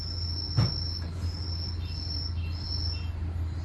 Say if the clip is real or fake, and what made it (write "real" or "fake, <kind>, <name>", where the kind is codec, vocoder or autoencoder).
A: real